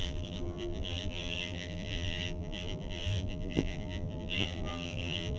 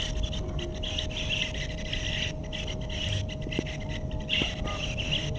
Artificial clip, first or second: first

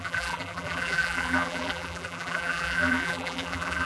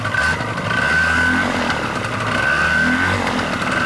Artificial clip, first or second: first